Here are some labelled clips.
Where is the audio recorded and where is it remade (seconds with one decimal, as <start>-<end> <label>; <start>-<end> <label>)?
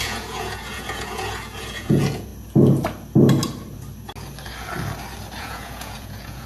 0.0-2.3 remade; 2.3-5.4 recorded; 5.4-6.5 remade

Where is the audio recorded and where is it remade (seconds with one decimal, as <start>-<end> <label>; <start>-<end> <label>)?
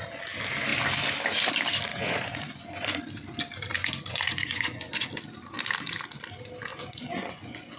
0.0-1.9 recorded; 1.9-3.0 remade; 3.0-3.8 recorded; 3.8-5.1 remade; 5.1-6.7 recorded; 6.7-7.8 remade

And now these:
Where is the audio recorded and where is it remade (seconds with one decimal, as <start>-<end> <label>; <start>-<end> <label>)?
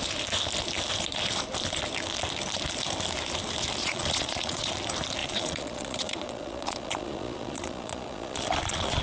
0.0-3.8 recorded; 3.8-4.7 remade; 4.7-5.2 recorded; 5.2-9.0 remade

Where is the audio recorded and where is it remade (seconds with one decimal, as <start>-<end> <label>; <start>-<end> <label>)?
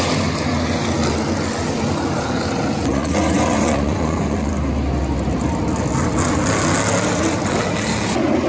0.0-2.9 recorded; 2.9-4.5 remade; 4.5-8.5 recorded